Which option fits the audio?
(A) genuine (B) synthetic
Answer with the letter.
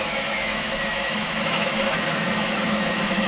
B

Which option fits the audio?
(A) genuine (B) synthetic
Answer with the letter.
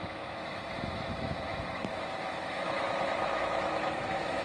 B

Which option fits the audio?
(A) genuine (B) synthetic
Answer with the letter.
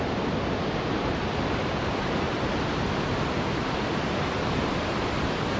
A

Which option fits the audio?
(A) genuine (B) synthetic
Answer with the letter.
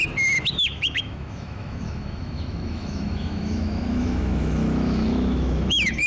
B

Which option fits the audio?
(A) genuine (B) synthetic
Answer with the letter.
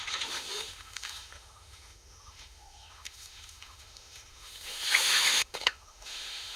B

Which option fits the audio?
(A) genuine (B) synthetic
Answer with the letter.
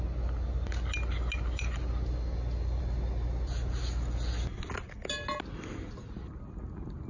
A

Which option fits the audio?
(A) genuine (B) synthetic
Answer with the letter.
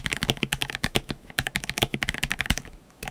B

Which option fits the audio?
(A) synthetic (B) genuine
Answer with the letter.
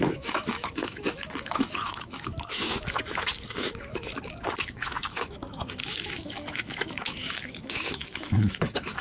A